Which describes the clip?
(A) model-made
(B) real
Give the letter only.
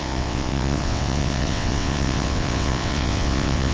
A